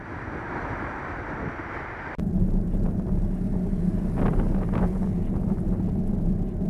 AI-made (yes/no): no